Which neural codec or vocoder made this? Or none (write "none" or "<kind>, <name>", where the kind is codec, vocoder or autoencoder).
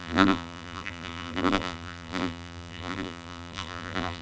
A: vocoder, BigVGAN v2